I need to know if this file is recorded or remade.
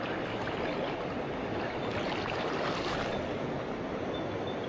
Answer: recorded